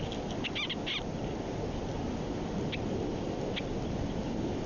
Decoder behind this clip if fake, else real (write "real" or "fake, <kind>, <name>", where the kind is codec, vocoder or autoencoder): real